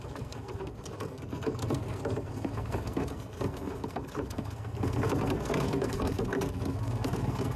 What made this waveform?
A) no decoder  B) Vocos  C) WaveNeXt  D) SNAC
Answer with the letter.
D